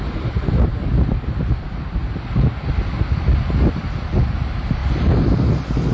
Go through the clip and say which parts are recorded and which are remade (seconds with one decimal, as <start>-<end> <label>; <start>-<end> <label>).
0.0-0.7 remade; 0.7-1.4 recorded; 1.4-2.0 remade; 2.0-3.7 recorded; 3.7-4.8 remade; 4.8-5.9 recorded